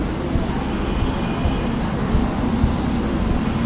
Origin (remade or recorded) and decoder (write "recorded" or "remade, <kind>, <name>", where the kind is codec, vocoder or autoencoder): recorded